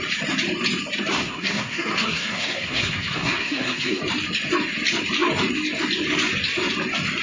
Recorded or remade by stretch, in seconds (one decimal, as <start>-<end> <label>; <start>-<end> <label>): 0.0-1.1 recorded; 1.1-4.0 remade; 4.0-7.2 recorded